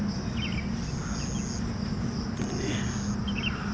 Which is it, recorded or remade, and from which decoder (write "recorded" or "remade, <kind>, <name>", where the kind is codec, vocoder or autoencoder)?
recorded